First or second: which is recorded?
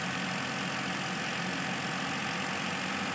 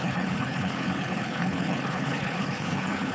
first